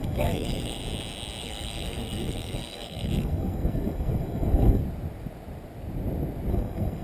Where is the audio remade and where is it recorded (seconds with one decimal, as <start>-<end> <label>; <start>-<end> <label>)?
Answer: 0.0-0.8 remade; 0.8-1.4 recorded; 1.4-4.8 remade; 4.8-6.5 recorded; 6.5-7.0 remade

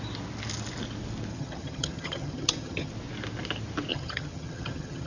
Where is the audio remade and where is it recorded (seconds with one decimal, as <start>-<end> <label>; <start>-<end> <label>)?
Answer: 0.0-1.3 recorded; 1.3-2.9 remade; 2.9-3.9 recorded; 3.9-5.1 remade